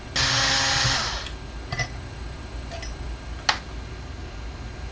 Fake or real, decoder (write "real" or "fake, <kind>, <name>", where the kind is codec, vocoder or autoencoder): real